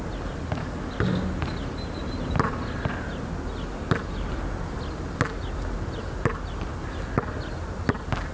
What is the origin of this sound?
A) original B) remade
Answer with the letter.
A